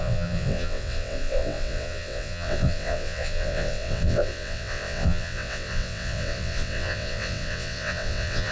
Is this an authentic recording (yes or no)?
no